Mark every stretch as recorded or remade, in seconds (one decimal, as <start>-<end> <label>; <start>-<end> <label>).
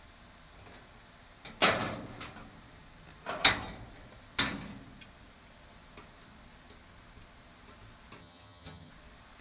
0.0-8.2 recorded; 8.2-8.9 remade; 8.9-9.4 recorded